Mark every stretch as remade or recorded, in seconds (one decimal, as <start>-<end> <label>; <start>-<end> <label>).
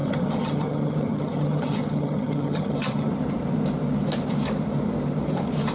0.0-3.1 remade; 3.1-5.7 recorded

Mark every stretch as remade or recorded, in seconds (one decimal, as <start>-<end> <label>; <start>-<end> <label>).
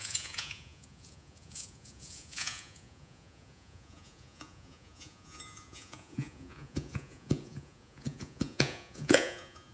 0.0-9.7 remade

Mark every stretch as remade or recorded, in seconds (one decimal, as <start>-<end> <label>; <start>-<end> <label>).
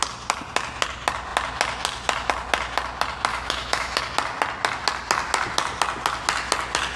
0.0-3.3 recorded; 3.3-4.0 remade; 4.0-7.0 recorded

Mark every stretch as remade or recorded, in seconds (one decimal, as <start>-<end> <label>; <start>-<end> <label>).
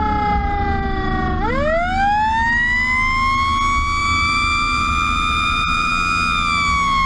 0.0-0.4 recorded; 0.4-1.5 remade; 1.5-4.0 recorded; 4.0-5.9 remade; 5.9-7.1 recorded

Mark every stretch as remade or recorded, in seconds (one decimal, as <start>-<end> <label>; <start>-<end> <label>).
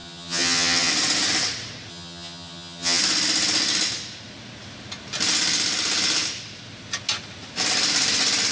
0.0-0.9 remade; 0.9-1.9 recorded; 1.9-3.0 remade; 3.0-8.5 recorded